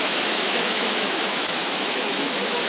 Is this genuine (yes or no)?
no